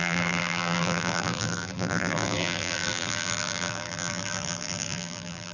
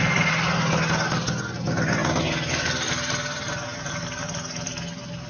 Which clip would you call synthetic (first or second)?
first